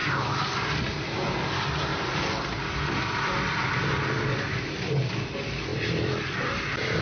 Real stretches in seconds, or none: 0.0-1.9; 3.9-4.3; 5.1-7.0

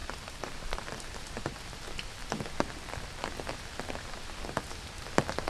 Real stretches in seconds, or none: 1.4-5.5

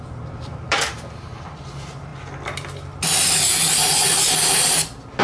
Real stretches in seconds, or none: 2.1-5.2

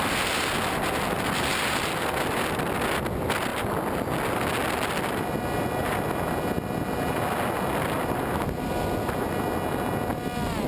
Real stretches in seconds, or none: 0.0-1.5; 2.8-3.5; 4.0-10.7

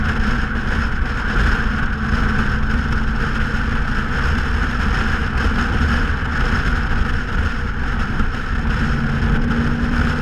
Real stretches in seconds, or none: 0.0-5.2